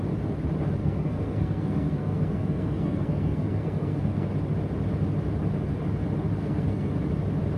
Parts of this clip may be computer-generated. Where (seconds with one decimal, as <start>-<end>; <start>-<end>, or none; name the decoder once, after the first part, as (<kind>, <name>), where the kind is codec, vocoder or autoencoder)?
0.8-4.3 (codec, SNAC); 6.4-7.0